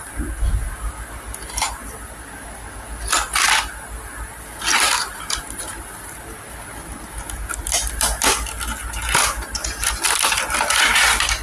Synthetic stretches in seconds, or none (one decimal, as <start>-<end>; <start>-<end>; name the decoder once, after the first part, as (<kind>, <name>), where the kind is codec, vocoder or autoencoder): none